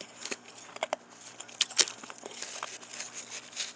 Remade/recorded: recorded